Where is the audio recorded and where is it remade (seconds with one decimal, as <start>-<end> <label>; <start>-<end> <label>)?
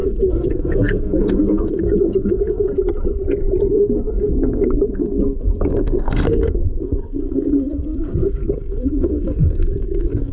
0.0-2.7 remade; 2.7-3.7 recorded; 3.7-10.3 remade